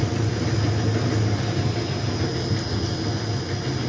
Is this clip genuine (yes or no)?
yes